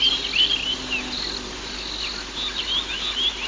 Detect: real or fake real